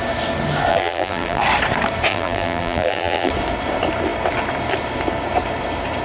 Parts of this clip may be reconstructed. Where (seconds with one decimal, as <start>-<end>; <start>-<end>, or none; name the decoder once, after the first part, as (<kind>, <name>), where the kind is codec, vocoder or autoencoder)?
0.7-1.4 (vocoder, BigVGAN v2); 2.1-3.3